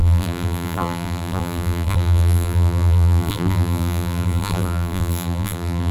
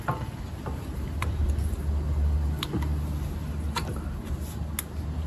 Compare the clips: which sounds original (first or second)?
second